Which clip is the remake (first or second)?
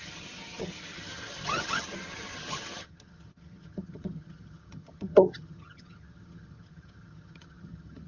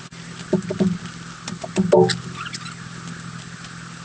first